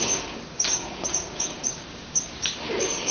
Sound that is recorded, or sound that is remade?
remade